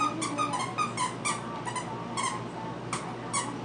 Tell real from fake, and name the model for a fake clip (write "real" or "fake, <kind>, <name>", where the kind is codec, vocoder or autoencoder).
real